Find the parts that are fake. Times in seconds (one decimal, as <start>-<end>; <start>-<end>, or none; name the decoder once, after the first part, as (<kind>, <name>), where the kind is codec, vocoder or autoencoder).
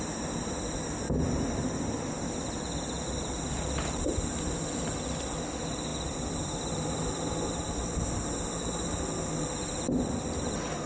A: none